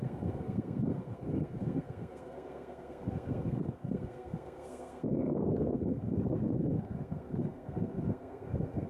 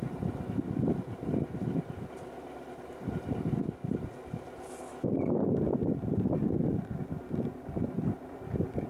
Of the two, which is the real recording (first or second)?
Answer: second